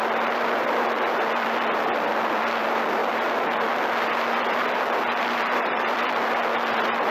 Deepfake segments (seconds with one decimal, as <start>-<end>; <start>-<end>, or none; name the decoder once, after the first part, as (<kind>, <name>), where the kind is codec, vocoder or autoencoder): 0.0-3.0 (vocoder, BigVGAN v2); 5.2-7.1